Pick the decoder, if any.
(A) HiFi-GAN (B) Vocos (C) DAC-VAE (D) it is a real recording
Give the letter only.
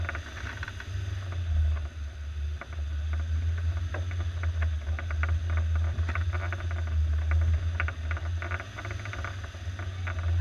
D